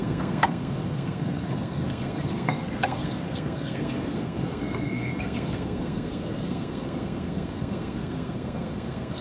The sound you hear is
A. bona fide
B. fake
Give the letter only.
B